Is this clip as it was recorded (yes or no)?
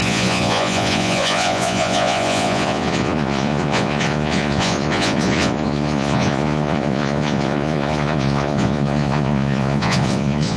no